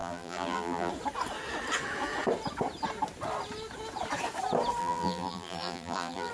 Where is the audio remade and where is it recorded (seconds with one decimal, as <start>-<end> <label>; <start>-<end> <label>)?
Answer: 0.0-0.9 remade; 0.9-4.8 recorded; 4.8-6.3 remade